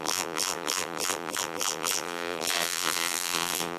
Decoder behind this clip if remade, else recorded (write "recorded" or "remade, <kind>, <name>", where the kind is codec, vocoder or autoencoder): remade, vocoder, BigVGAN v2